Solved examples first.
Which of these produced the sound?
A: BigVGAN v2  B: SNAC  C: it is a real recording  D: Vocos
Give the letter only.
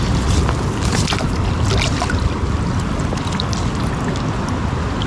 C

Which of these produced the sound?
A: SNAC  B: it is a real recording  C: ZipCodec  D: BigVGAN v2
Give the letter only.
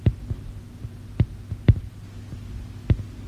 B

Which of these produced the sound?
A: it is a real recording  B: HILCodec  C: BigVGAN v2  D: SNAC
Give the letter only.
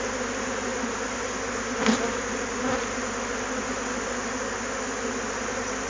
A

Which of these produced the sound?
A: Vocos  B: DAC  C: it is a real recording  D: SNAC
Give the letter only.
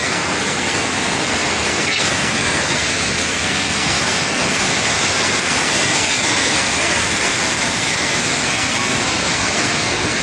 D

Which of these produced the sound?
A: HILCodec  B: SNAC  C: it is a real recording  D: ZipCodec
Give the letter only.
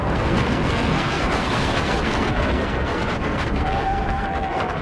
B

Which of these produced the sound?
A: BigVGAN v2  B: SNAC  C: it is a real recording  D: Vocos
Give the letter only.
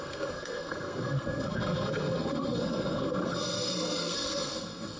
B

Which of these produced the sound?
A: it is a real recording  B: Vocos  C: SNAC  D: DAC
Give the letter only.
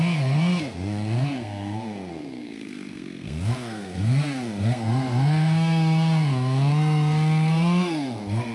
C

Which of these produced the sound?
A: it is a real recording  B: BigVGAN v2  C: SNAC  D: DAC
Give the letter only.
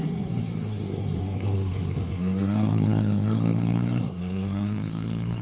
C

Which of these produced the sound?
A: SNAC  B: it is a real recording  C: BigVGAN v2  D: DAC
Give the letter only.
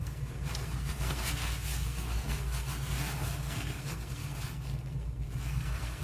A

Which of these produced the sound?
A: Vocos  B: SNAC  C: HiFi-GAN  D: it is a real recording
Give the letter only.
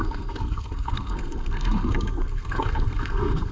B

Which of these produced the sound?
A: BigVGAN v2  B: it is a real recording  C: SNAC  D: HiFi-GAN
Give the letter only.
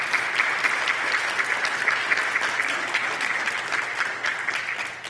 B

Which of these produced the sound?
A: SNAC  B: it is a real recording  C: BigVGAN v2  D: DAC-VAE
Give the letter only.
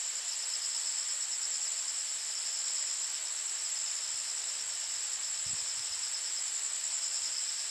B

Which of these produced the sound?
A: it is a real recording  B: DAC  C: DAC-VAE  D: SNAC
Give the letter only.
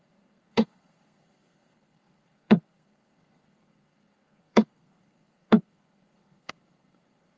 D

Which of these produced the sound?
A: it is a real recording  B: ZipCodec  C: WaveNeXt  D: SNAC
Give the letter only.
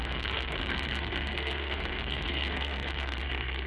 D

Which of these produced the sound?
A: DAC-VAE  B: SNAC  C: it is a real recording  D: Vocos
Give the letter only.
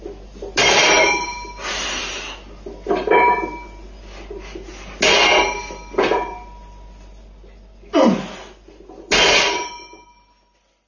C